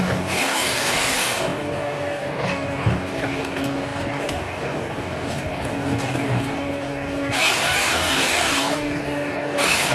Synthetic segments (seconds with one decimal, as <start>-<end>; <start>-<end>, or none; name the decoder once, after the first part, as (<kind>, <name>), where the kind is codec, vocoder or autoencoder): 0.0-9.9 (codec, DAC)